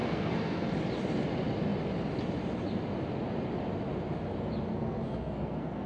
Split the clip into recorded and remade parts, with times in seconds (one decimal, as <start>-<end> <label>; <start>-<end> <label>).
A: 0.0-0.6 remade; 0.6-4.7 recorded; 4.7-5.9 remade